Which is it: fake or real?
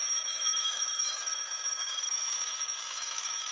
fake